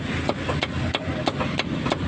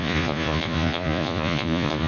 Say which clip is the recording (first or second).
first